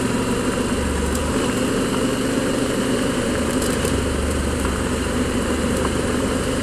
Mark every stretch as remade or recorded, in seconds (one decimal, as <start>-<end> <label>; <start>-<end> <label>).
0.0-2.4 recorded; 2.4-6.6 remade